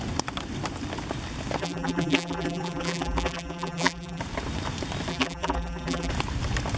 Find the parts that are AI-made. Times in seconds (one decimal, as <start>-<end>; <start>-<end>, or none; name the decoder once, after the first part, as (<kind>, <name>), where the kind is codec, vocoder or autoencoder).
1.6-4.2 (vocoder, BigVGAN v2); 5.1-6.1